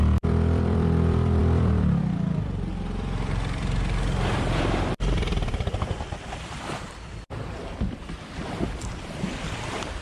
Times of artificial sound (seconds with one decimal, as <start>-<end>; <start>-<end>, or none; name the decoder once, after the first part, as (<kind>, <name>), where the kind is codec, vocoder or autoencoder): 0.0-10.0 (vocoder, BigVGAN v2)